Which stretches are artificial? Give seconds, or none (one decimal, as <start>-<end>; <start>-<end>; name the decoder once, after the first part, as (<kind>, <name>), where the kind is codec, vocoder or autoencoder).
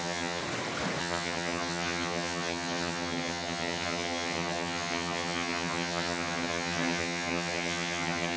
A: 0.0-0.4 (vocoder, HiFi-GAN); 1.0-8.4